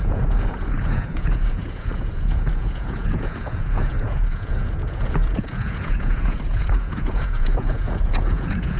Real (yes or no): no